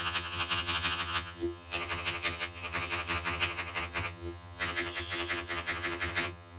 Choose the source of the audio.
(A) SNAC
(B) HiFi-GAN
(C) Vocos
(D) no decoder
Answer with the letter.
B